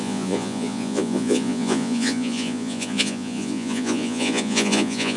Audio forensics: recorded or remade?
remade